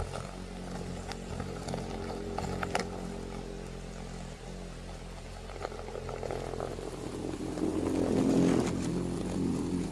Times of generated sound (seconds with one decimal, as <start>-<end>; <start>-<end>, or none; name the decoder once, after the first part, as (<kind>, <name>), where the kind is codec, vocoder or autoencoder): none